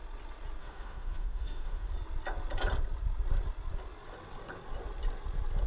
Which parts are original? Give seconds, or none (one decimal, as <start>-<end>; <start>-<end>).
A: 0.0-0.6; 1.9-5.7